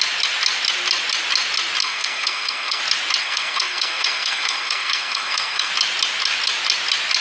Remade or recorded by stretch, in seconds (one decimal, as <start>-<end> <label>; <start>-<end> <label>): 0.0-1.8 recorded; 1.8-2.8 remade; 2.8-3.2 recorded; 3.2-5.7 remade; 5.7-7.2 recorded